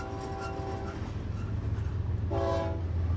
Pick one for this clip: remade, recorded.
recorded